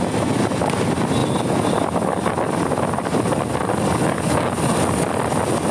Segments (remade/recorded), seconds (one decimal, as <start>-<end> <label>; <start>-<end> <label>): 0.0-5.7 recorded